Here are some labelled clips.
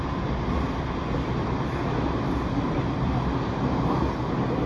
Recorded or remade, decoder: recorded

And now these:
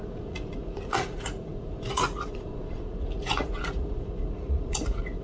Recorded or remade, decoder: remade, vocoder, Vocos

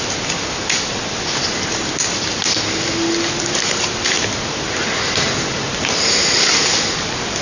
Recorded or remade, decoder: recorded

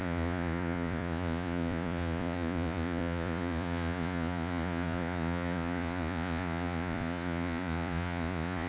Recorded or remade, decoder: remade, vocoder, Vocos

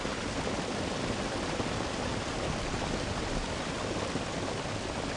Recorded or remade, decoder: recorded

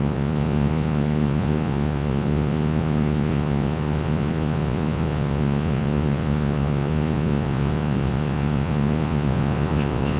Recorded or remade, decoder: remade, vocoder, Vocos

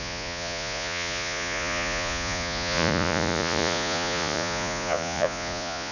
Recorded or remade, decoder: remade, vocoder, Vocos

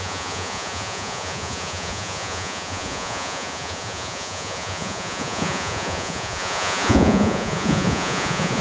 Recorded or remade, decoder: remade, vocoder, Vocos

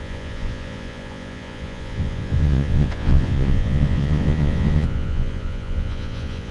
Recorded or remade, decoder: remade, vocoder, Vocos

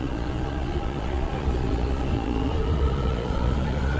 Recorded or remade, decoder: remade, vocoder, Vocos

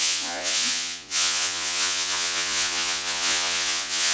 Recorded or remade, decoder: remade, vocoder, Vocos